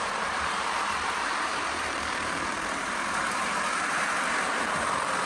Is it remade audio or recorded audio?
remade